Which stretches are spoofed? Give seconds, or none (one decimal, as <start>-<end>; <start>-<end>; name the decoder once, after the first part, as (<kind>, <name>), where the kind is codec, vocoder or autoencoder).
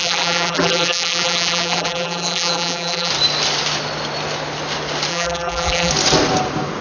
0.0-3.1 (vocoder, BigVGAN v2); 5.1-5.9